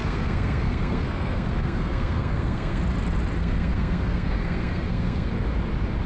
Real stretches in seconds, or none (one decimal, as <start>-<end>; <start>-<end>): 2.8-3.4; 5.3-6.1